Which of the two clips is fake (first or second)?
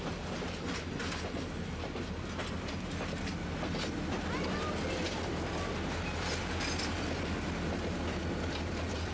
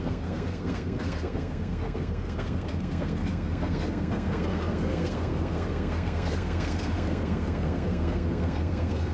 second